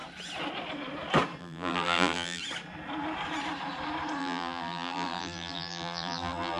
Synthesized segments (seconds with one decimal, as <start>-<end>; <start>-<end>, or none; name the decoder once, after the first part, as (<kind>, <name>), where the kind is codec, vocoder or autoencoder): 1.4-2.4 (vocoder, BigVGAN v2); 4.2-6.6